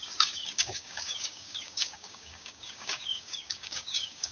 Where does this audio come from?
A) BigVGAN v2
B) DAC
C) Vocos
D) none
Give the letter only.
B